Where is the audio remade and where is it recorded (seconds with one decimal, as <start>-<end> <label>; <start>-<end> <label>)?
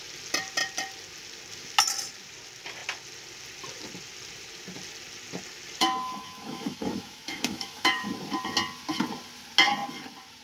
0.0-5.8 recorded; 5.8-8.1 remade; 8.1-10.4 recorded